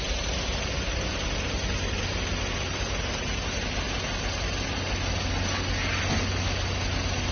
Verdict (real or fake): real